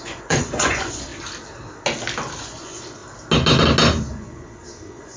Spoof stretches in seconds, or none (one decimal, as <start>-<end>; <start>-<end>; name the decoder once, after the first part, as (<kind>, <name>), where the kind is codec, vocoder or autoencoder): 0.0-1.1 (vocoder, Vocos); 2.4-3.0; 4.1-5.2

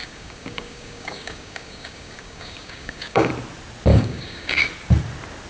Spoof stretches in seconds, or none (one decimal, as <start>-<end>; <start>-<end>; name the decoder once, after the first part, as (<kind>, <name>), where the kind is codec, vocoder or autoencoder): 0.0-3.3 (codec, DAC); 3.9-4.7

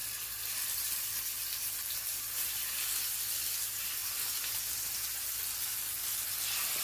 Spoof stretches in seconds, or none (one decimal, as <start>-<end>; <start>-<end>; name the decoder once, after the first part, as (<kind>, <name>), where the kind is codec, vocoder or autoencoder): 0.0-1.4 (vocoder, BigVGAN v2)

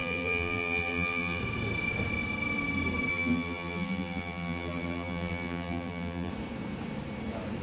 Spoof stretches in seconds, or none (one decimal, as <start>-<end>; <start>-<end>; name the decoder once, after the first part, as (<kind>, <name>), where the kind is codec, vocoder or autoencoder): 0.0-1.4 (vocoder, BigVGAN v2); 3.1-6.3

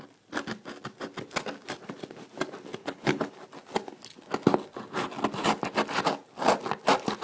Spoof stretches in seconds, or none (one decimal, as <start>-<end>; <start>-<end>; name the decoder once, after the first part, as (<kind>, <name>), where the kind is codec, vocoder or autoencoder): 2.8-3.3 (codec, HILCodec)

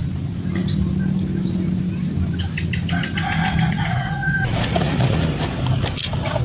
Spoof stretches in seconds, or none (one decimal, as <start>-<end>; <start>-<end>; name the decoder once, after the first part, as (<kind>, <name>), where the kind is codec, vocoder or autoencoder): 3.7-5.2 (vocoder, Vocos)